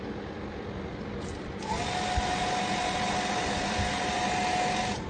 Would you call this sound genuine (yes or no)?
yes